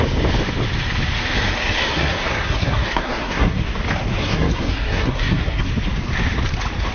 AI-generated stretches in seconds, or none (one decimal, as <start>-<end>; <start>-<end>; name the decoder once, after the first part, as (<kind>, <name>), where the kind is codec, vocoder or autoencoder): 1.8-3.6 (codec, SNAC); 4.2-5.7